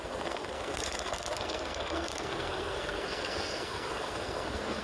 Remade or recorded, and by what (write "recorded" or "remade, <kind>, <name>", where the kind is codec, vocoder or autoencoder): remade, codec, SNAC